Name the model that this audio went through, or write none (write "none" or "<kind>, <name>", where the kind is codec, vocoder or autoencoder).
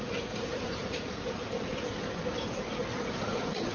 vocoder, Vocos